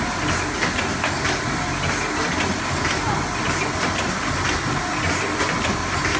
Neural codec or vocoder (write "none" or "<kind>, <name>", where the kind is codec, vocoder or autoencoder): none